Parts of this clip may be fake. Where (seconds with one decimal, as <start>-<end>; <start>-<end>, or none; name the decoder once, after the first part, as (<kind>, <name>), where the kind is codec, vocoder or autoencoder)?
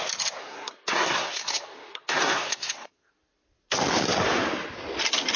0.4-3.1 (codec, SNAC)